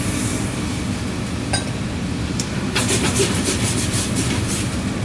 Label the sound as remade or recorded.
recorded